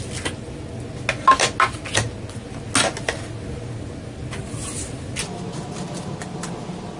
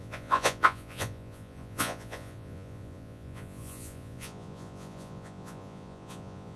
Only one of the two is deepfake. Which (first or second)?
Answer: second